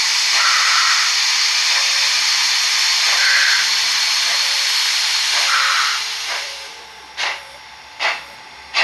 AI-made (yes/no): no